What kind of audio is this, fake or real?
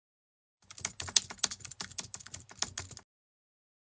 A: real